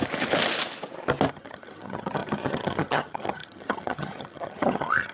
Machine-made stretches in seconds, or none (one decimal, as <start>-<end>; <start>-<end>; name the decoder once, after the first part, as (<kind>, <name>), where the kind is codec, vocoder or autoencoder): 1.3-5.1 (vocoder, HiFi-GAN)